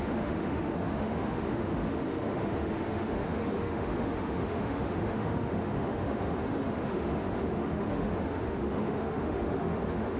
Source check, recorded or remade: remade